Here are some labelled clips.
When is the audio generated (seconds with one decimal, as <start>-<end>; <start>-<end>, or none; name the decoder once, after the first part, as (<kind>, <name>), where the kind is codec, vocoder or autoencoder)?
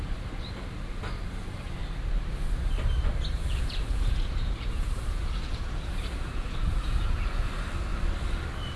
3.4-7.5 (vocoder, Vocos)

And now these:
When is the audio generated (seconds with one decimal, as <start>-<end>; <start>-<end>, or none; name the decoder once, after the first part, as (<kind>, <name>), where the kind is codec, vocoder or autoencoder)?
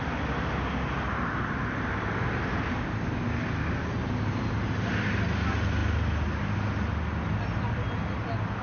none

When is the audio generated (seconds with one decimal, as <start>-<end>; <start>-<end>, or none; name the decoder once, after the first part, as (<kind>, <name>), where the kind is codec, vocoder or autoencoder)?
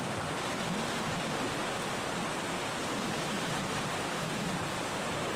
none